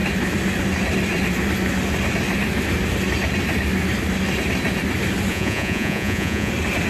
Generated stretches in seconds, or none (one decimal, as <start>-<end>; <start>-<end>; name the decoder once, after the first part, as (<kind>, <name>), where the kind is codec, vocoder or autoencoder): 5.3-6.5 (vocoder, Vocos)